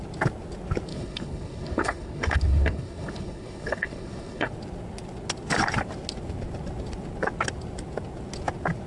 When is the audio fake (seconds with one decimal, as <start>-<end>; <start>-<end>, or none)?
0.9-4.5